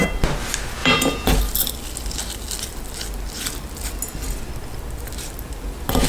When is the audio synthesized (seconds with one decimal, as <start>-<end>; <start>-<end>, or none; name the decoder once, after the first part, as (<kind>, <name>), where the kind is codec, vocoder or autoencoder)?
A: 0.8-1.4 (vocoder, Vocos)